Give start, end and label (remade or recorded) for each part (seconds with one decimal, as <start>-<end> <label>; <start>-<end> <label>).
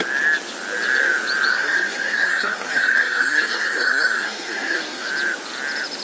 0.0-1.5 recorded; 1.5-5.1 remade; 5.1-6.0 recorded